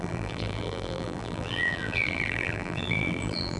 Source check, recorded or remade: remade